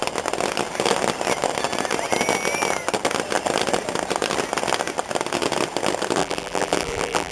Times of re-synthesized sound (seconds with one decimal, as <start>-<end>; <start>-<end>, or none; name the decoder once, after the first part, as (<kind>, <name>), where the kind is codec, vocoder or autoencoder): 6.2-7.3 (vocoder, BigVGAN v2)